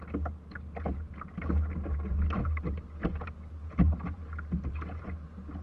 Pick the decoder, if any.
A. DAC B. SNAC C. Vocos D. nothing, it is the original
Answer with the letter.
D